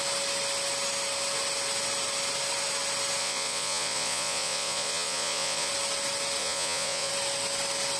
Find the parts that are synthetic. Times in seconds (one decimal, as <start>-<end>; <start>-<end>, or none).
3.2-5.7; 6.4-7.1